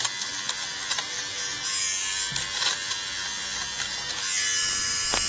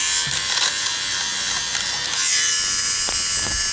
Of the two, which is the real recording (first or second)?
first